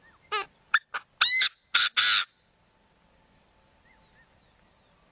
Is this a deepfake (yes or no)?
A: no